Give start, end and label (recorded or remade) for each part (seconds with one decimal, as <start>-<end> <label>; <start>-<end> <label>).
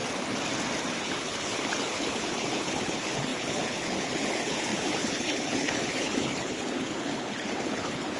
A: 0.0-1.0 recorded; 1.0-8.2 remade